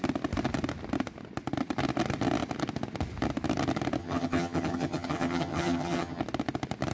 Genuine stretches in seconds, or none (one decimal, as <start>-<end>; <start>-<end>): 0.0-4.0; 6.2-6.9